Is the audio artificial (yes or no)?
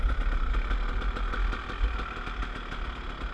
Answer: no